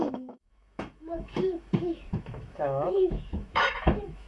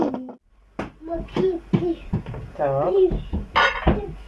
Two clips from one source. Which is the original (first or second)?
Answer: second